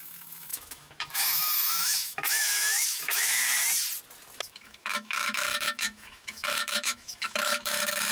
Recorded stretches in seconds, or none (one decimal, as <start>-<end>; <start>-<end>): 3.4-4.4